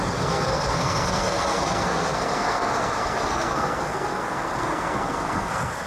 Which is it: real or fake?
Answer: fake